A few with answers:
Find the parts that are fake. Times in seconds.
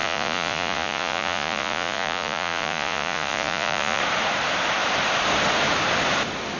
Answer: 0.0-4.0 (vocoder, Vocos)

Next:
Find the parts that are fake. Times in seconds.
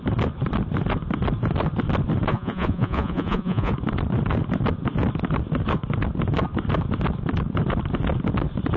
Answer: 2.3-3.7 (vocoder, Vocos)